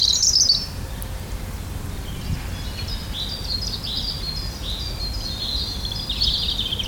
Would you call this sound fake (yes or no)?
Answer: no